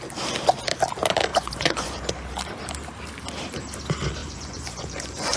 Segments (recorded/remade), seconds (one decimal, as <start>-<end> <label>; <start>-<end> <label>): 0.0-1.3 recorded; 1.3-2.1 remade; 2.1-4.2 recorded; 4.2-5.4 remade

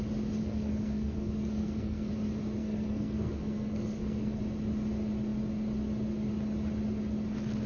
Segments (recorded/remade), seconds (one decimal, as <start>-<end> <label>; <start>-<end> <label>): 0.0-0.4 recorded; 0.4-2.1 remade; 2.1-2.6 recorded; 2.6-4.4 remade; 4.4-7.7 recorded

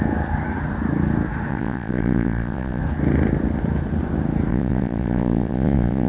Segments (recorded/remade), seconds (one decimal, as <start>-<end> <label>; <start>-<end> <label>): 0.0-1.5 recorded; 1.5-2.8 remade; 2.8-4.5 recorded; 4.5-6.1 remade

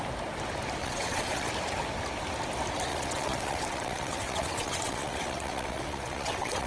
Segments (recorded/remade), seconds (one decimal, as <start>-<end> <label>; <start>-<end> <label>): 0.0-0.8 recorded; 0.8-1.5 remade; 1.5-2.9 recorded; 2.9-6.7 remade

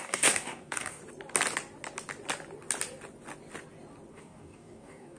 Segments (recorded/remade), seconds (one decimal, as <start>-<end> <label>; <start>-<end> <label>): 0.0-1.0 remade; 1.0-4.1 recorded; 4.1-5.2 remade

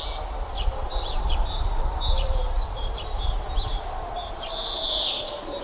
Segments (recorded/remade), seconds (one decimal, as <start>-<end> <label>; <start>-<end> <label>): 0.0-0.8 recorded; 0.8-3.2 remade; 3.2-4.5 recorded; 4.5-5.6 remade